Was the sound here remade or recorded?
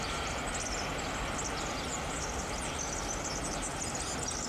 recorded